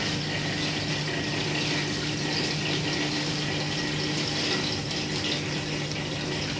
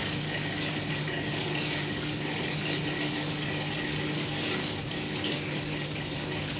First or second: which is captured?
first